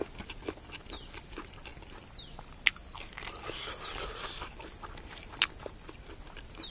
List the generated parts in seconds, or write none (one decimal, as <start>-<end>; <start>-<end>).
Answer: none